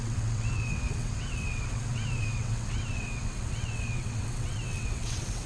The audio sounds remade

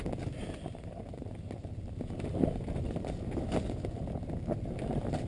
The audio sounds recorded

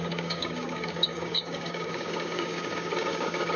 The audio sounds remade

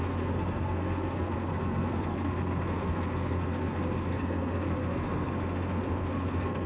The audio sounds remade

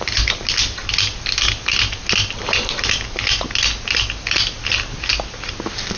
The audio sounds recorded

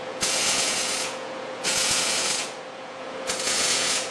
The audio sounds remade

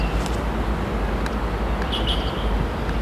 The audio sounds recorded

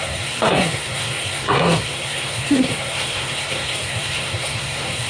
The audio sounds remade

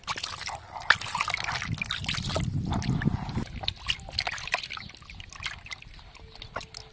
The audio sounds recorded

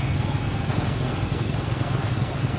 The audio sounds remade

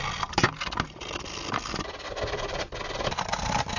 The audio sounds recorded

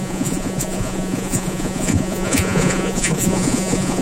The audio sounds remade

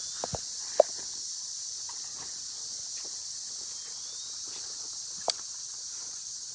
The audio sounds recorded